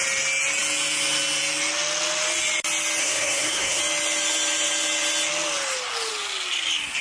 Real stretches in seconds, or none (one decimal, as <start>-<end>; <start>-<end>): 0.0-3.0; 3.8-7.0